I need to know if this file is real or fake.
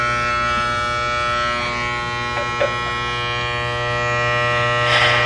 real